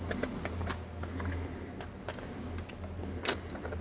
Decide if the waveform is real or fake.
real